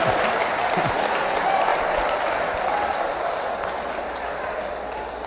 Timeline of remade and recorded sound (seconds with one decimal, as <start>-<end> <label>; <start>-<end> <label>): 0.0-5.3 recorded